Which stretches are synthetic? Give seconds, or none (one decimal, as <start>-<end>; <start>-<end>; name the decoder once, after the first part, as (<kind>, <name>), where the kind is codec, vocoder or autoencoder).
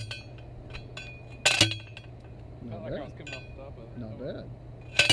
none